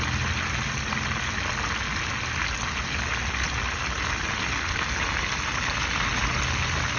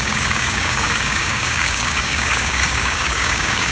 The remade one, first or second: second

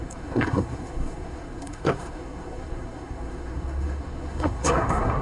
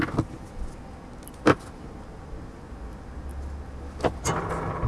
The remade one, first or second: first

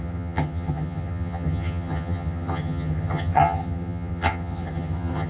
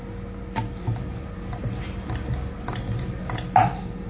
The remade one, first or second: first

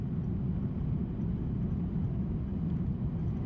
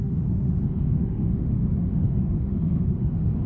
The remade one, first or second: second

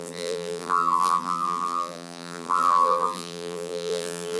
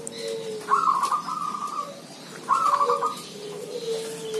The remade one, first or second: first